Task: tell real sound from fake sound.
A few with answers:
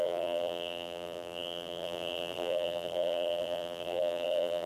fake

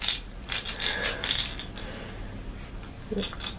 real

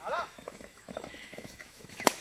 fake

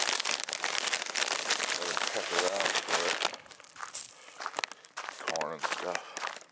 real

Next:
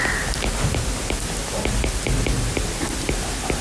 real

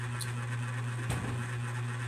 real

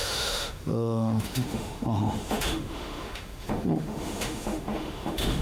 fake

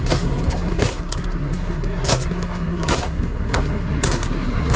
fake